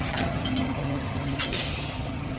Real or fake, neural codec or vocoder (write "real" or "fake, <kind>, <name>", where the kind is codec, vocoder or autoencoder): fake, vocoder, HiFi-GAN